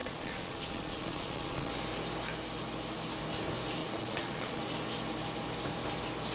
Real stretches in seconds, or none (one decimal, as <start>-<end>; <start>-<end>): 1.7-3.8; 4.6-6.3